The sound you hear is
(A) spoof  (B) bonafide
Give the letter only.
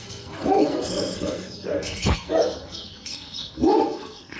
A